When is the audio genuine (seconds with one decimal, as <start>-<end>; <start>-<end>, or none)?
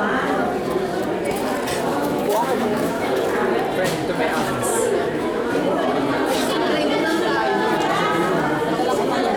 0.0-1.9; 3.2-4.7; 5.5-9.4